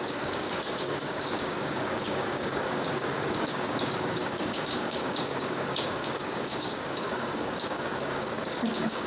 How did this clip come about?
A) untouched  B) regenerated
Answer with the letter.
B